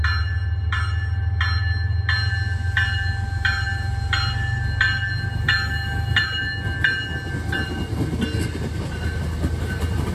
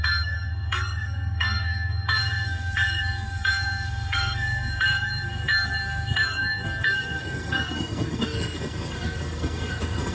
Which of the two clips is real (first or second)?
first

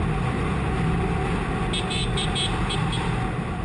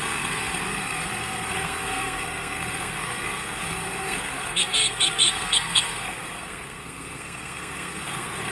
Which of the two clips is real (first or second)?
first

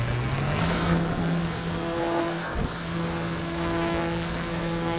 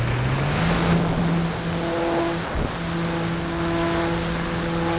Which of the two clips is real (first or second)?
second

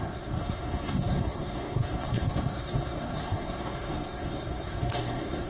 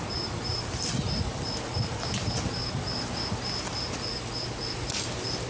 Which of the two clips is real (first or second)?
second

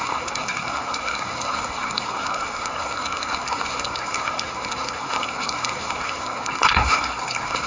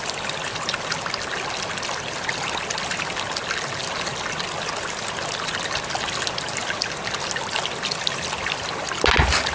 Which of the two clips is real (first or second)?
second